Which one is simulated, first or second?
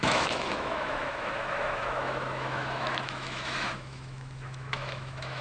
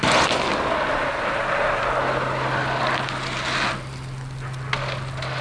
first